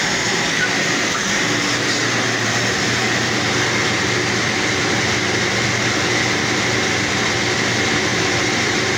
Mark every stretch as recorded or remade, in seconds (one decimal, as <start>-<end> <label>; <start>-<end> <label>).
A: 0.0-9.0 recorded